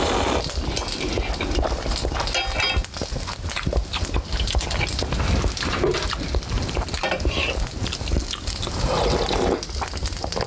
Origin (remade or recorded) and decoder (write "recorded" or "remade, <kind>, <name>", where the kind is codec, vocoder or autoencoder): recorded